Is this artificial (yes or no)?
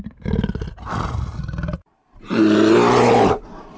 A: no